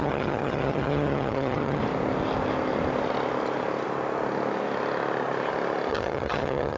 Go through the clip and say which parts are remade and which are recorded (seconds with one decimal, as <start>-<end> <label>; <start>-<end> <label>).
0.0-1.8 remade; 1.8-5.9 recorded; 5.9-6.8 remade